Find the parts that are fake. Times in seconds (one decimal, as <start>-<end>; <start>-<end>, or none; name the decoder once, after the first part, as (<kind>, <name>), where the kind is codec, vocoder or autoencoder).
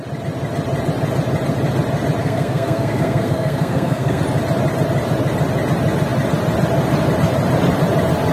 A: 2.2-4.2 (codec, SNAC)